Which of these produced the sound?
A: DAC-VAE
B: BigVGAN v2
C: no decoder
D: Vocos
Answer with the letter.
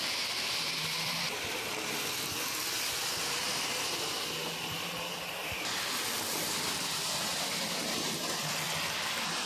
B